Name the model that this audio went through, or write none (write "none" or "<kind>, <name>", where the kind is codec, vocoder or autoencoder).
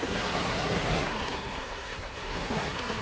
codec, SNAC